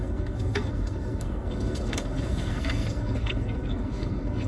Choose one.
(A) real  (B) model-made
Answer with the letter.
B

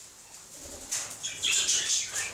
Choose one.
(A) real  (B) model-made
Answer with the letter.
A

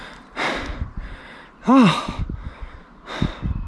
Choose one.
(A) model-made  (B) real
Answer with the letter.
B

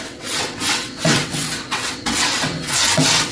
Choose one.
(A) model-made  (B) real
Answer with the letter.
A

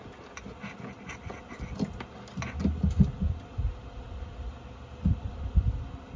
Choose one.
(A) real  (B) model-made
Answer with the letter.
A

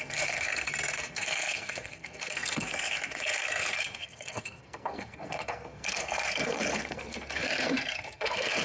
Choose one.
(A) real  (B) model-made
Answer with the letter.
B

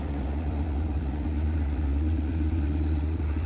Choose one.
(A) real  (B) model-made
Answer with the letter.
B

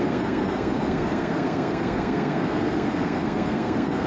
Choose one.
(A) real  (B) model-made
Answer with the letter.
B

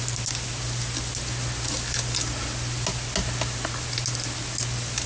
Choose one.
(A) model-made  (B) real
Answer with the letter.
B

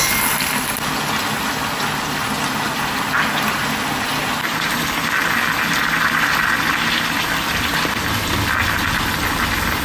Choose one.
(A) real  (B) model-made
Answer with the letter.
A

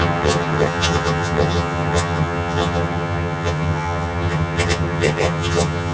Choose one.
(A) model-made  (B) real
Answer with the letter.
A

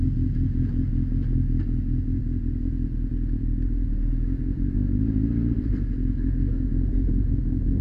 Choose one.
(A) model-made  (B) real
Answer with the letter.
B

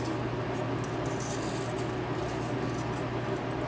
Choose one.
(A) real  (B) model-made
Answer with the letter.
A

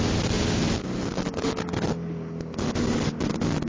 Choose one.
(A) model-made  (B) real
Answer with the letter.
B